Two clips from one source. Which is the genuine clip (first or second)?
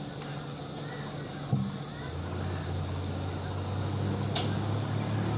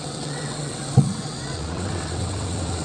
first